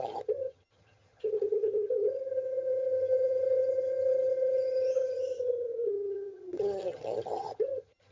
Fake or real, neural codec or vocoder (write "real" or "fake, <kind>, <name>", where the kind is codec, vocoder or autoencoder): fake, vocoder, HiFi-GAN